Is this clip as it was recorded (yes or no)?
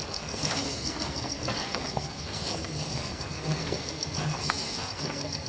no